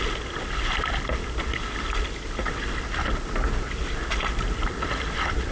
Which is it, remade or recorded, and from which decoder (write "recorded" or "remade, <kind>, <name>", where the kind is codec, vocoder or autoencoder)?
recorded